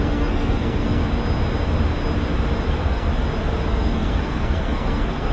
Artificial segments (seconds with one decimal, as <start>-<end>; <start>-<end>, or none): 0.0-1.0; 2.7-3.1; 3.7-5.3